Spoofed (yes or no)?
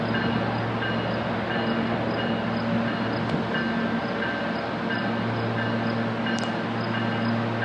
no